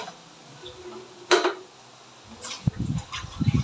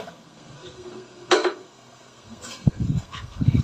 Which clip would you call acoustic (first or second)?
first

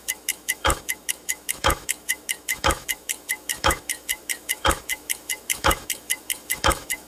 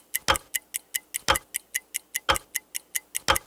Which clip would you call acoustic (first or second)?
second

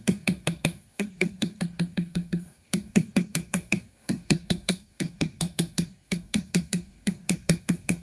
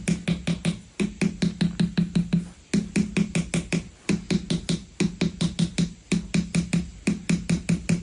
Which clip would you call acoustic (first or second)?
second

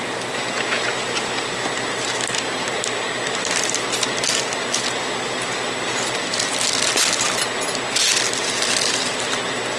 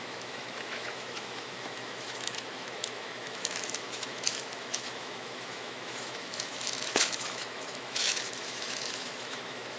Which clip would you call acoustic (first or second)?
first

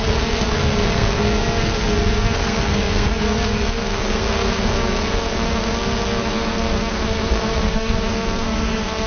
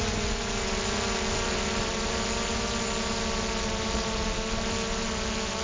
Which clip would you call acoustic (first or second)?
second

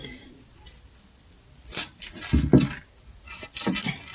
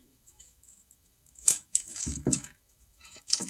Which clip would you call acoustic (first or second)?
first